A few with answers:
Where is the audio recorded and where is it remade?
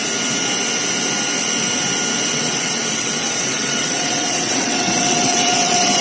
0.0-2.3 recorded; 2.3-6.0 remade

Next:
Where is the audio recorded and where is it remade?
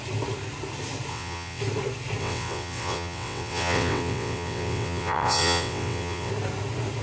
0.0-1.1 recorded; 1.1-1.6 remade; 1.6-2.2 recorded; 2.2-6.3 remade; 6.3-7.0 recorded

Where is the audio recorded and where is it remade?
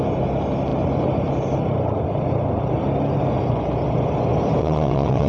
0.0-4.6 recorded; 4.6-5.3 remade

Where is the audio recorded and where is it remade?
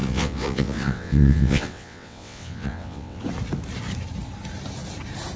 0.0-3.2 remade; 3.2-5.4 recorded